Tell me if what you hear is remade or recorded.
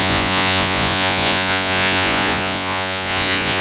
remade